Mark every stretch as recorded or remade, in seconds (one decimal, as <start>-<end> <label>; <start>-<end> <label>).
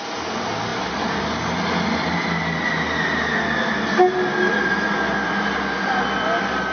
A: 0.0-6.7 recorded